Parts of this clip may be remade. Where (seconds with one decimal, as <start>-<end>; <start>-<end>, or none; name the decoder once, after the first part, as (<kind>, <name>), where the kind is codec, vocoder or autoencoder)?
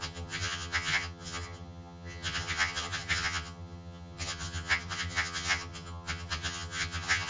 0.0-7.3 (vocoder, HiFi-GAN)